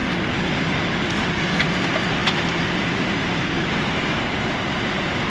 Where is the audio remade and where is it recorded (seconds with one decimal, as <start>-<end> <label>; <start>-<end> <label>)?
0.0-1.6 recorded; 1.6-5.3 remade